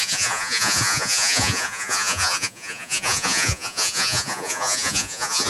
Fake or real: fake